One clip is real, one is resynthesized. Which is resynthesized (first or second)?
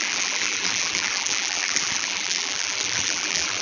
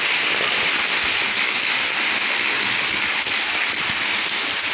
first